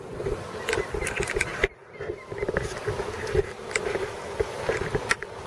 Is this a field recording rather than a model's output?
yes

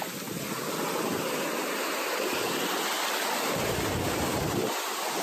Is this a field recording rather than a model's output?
yes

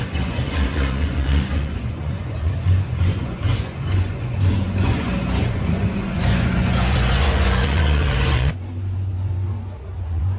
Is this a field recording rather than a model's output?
no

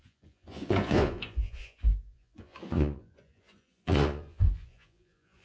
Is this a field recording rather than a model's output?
no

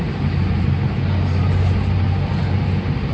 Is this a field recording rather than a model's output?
yes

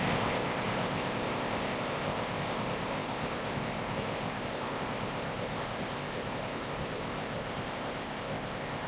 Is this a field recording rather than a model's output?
no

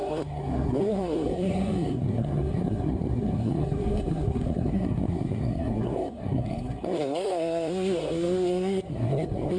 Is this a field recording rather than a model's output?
no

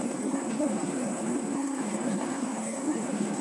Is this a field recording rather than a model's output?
no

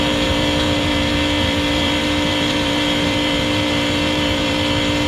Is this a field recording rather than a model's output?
no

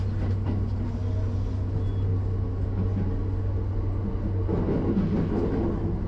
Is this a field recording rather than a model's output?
yes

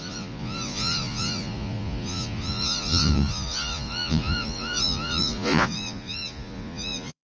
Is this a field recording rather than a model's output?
no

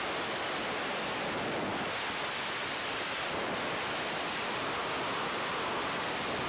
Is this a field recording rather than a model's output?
yes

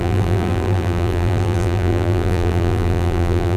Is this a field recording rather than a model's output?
no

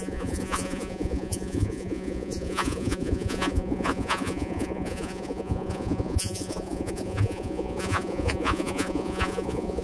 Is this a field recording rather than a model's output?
no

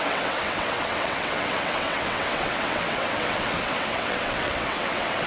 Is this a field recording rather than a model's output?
no